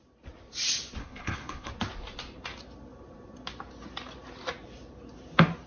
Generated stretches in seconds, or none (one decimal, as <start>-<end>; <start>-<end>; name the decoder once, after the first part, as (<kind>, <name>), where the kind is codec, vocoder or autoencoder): 1.0-1.7 (codec, HILCodec)